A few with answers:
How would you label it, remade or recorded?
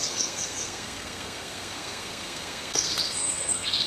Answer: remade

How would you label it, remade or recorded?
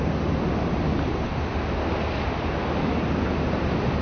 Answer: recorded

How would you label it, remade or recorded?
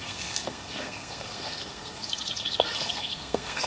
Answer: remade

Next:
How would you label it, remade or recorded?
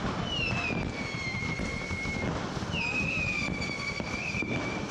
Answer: recorded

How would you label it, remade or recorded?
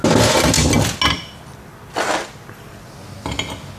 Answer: recorded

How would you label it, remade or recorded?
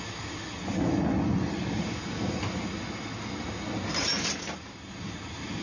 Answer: recorded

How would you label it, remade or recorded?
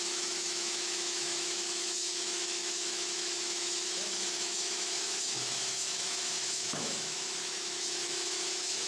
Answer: remade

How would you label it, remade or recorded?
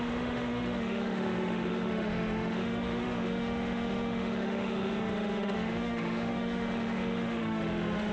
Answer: remade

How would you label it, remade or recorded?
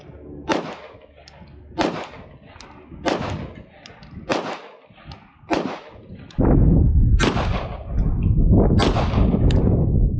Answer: recorded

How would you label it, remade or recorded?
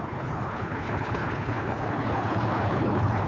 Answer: remade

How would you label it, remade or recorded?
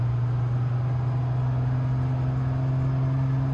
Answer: recorded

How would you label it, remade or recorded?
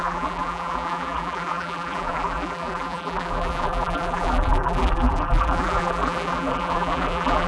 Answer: remade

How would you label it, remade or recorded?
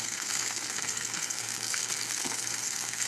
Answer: remade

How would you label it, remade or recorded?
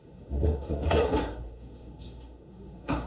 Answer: remade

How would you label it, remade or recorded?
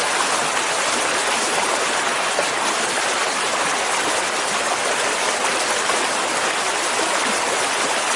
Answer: recorded